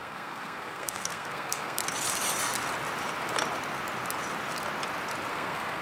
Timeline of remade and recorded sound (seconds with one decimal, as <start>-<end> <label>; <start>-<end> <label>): 0.0-1.8 remade; 1.8-5.3 recorded; 5.3-5.8 remade